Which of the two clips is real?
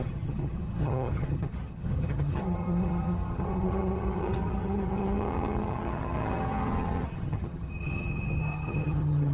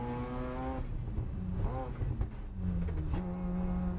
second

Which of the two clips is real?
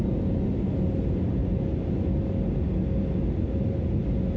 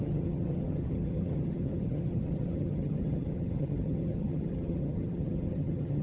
first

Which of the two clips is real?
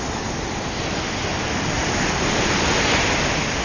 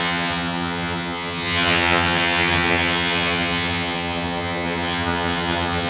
first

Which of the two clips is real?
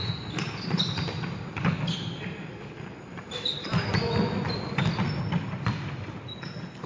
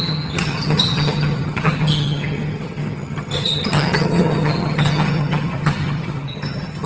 first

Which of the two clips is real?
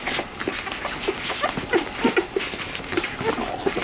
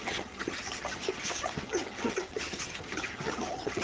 first